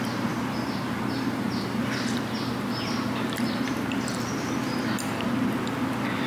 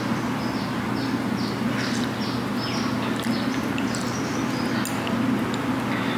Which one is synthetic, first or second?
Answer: first